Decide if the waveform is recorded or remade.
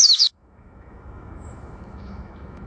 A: remade